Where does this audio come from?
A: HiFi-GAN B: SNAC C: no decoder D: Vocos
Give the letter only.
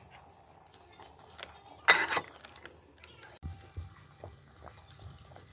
C